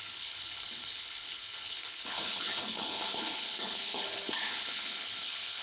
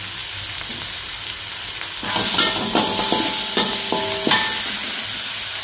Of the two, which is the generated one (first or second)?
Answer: first